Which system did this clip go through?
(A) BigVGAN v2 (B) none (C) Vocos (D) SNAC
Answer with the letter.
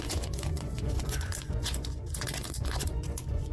C